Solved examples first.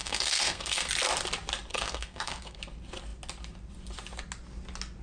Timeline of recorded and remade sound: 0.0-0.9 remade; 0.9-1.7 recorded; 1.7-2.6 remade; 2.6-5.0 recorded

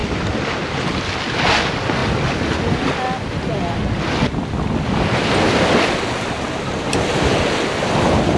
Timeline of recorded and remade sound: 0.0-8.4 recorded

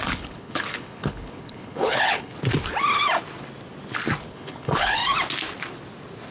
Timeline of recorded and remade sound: 0.0-2.3 remade; 2.3-4.2 recorded; 4.2-5.0 remade; 5.0-6.3 recorded

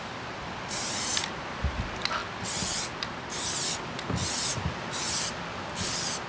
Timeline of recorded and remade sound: 0.0-6.3 recorded

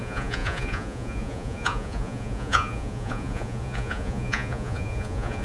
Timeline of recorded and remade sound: 0.0-5.4 remade